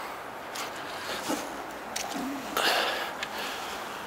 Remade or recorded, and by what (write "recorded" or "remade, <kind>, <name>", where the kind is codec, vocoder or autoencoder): recorded